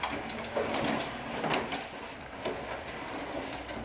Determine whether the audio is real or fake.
real